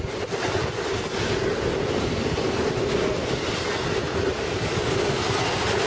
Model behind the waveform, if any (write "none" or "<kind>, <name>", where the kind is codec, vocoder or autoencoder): none